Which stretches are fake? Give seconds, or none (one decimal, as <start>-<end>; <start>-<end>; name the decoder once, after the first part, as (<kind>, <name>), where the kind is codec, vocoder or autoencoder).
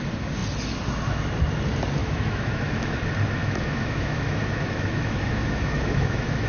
2.0-3.0 (autoencoder, DAC-VAE); 3.4-6.5